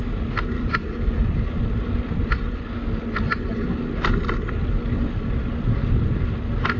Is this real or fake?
real